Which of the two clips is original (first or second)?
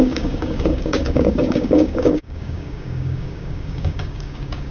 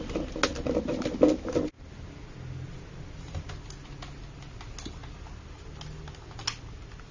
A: second